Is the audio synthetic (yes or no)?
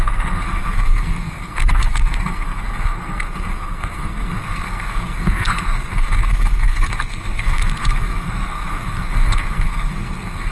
yes